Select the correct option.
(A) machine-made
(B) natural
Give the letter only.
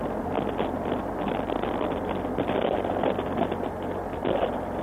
B